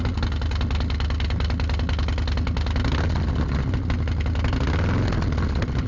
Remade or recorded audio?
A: recorded